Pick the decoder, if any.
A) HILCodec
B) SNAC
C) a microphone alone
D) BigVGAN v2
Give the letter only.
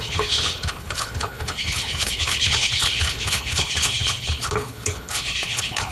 A